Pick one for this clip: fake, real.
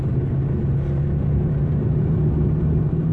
real